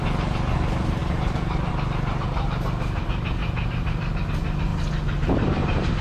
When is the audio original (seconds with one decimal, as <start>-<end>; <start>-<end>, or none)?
0.0-1.0; 1.7-3.4; 4.2-6.0

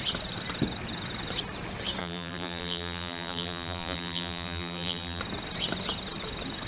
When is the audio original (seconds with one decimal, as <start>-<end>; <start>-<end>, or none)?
0.0-2.0; 5.2-6.7

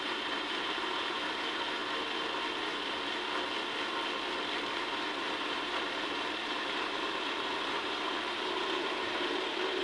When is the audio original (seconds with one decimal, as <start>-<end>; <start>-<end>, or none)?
1.8-4.7

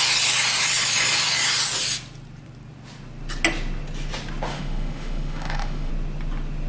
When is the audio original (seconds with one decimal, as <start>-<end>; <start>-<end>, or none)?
0.0-4.5; 5.9-6.7

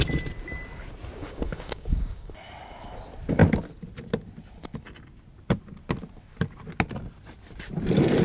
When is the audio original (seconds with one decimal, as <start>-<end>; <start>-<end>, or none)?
0.0-1.2; 2.3-8.2